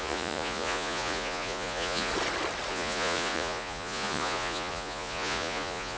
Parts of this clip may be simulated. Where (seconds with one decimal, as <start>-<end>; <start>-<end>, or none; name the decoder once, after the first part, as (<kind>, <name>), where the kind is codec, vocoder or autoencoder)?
0.0-2.1 (vocoder, Vocos); 2.7-6.0